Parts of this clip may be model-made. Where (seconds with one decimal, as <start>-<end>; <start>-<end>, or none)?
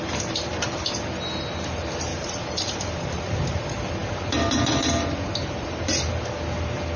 2.1-3.3; 5.4-6.1